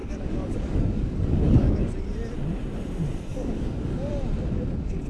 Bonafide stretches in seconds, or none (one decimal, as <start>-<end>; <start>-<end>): 1.8-3.3; 4.1-5.1